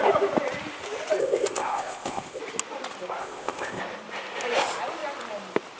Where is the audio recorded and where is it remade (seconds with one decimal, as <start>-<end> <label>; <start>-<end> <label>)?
0.0-1.2 recorded; 1.2-2.4 remade; 2.4-3.2 recorded; 3.2-3.8 remade; 3.8-5.8 recorded